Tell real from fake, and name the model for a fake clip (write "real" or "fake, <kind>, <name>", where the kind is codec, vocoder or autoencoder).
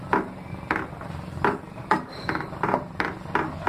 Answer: fake, vocoder, BigVGAN v2